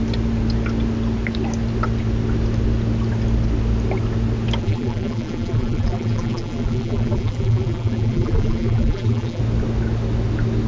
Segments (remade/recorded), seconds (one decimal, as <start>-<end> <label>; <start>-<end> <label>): 0.0-4.6 recorded; 4.6-9.4 remade; 9.4-10.7 recorded